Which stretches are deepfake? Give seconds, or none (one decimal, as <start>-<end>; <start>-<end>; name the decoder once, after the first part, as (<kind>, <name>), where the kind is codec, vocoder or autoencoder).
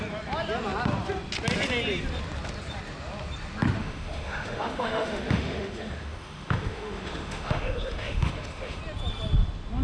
3.8-8.8 (autoencoder, DAC-VAE)